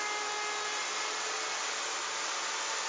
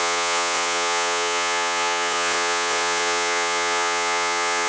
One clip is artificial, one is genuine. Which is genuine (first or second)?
first